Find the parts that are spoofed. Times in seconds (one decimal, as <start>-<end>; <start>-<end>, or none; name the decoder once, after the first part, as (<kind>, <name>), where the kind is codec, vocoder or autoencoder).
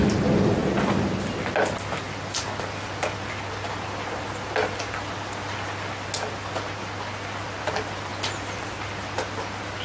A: none